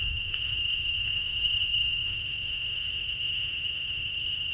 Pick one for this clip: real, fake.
fake